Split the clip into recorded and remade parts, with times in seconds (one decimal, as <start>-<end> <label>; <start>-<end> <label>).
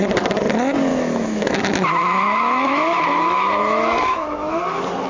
0.0-0.9 recorded; 0.9-1.6 remade; 1.6-2.0 recorded; 2.0-4.6 remade; 4.6-5.1 recorded